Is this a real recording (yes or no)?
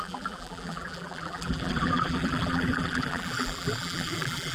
no